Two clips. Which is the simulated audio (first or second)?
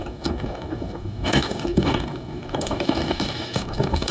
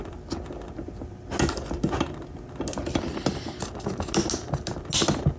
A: first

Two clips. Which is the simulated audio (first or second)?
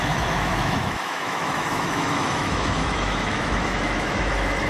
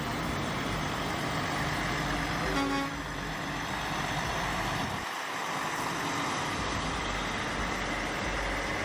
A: first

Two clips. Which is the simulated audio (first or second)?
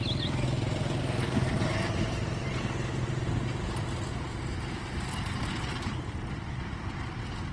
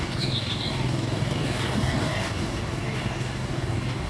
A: second